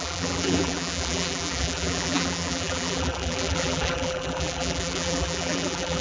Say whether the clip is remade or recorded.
remade